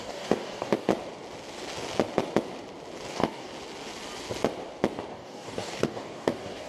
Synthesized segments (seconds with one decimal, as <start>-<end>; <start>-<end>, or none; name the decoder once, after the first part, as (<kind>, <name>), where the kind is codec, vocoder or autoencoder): 0.0-0.9 (codec, DAC); 3.1-3.5; 5.1-6.7